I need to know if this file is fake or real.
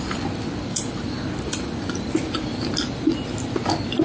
real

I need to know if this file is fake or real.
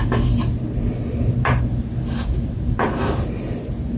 real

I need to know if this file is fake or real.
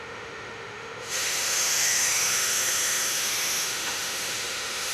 fake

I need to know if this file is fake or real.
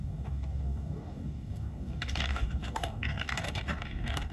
fake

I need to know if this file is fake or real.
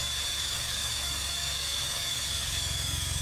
fake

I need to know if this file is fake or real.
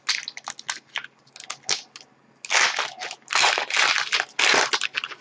real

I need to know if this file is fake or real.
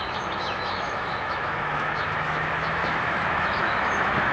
fake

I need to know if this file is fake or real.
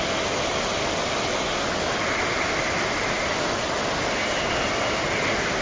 real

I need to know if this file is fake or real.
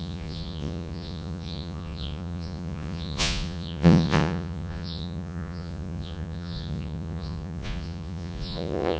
fake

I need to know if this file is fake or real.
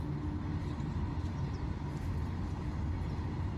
real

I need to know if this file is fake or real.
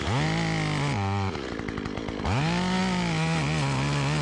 real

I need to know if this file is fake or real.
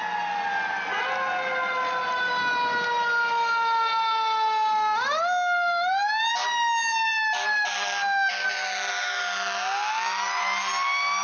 real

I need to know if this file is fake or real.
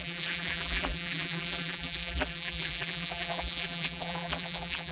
fake